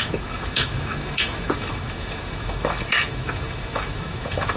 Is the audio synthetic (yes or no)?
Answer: yes